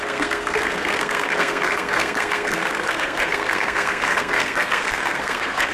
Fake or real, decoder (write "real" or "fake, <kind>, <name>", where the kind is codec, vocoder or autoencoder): fake, codec, SNAC